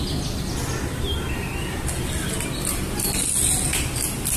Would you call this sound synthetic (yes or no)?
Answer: no